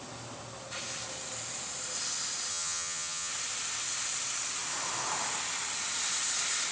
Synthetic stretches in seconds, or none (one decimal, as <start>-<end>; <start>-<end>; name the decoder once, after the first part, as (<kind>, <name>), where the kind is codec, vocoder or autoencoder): 2.5-3.3 (vocoder, HiFi-GAN)